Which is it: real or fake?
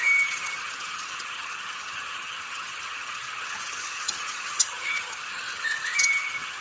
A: fake